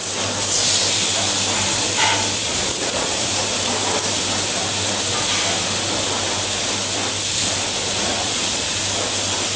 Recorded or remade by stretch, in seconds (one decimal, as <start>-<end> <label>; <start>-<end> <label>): 0.0-2.4 recorded; 2.4-3.3 remade; 3.3-8.2 recorded; 8.2-8.8 remade; 8.8-9.6 recorded